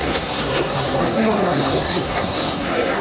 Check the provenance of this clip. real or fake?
fake